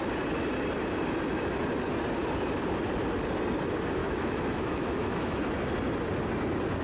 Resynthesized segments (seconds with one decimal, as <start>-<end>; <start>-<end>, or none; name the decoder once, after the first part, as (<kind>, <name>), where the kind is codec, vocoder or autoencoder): 4.0-5.4 (autoencoder, DAC-VAE)